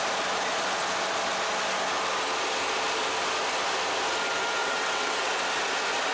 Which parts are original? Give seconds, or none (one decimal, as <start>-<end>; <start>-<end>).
0.0-4.6; 5.3-6.1